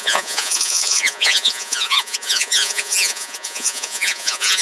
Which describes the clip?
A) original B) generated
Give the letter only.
B